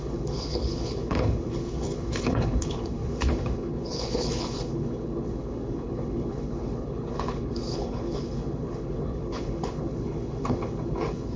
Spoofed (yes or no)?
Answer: yes